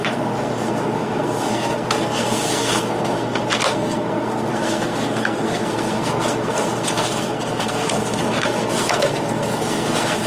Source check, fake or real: fake